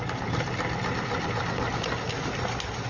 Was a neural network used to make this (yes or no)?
no